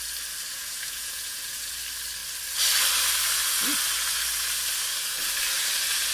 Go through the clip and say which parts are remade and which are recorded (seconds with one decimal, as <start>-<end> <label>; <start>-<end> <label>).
0.0-0.5 recorded; 0.5-1.7 remade; 1.7-6.1 recorded